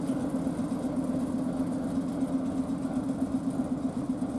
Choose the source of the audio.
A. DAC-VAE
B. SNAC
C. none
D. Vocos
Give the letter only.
C